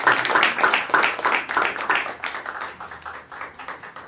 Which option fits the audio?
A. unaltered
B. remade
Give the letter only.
A